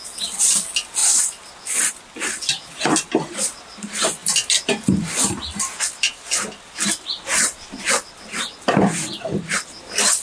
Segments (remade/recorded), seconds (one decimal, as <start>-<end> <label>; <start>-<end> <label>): 0.0-10.2 recorded